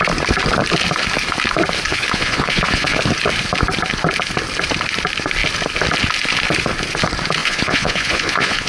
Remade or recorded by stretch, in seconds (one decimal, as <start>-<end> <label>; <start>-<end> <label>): 0.0-1.9 recorded; 1.9-3.0 remade; 3.0-7.4 recorded; 7.4-8.7 remade

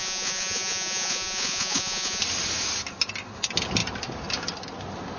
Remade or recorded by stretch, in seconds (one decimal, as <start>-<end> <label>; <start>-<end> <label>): 0.0-2.2 remade; 2.2-5.2 recorded

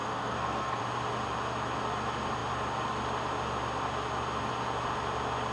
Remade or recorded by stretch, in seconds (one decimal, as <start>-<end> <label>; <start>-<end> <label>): 0.0-0.8 remade; 0.8-5.5 recorded

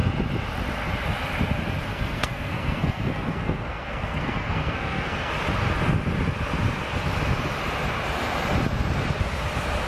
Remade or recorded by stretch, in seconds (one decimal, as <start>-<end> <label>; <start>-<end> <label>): 0.0-1.9 recorded; 1.9-5.3 remade; 5.3-9.9 recorded

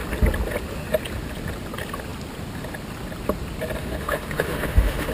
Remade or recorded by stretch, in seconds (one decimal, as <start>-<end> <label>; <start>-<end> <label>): 0.0-3.8 recorded; 3.8-5.1 remade

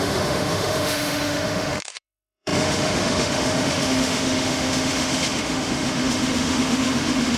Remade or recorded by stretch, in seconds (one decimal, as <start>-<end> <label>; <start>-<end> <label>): 0.0-7.4 remade

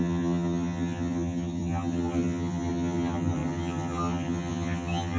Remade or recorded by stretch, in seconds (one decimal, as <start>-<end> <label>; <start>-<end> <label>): 0.0-5.2 remade